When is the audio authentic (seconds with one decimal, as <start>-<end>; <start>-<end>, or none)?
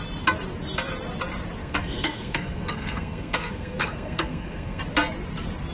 0.0-1.6; 4.8-5.7